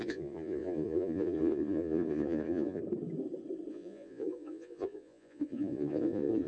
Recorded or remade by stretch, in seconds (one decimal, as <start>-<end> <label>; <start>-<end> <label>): 0.0-2.8 remade; 2.8-3.7 recorded; 3.7-6.5 remade